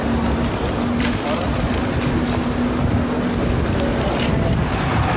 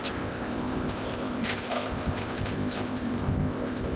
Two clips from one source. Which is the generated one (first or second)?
second